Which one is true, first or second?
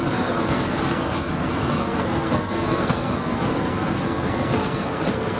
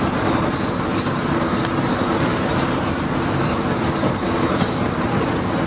second